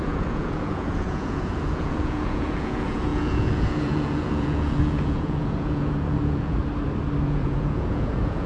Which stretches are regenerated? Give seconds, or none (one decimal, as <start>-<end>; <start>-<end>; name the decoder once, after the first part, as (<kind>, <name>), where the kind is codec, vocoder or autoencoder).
0.0-6.6 (vocoder, Vocos); 7.2-8.5